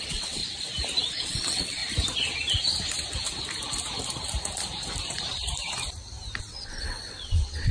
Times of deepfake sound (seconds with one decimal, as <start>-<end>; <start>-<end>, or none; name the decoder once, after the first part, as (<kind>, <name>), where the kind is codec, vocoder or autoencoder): 0.0-0.4 (vocoder, WaveNeXt); 1.1-1.8; 6.4-7.7